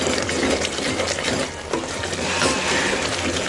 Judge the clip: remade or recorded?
recorded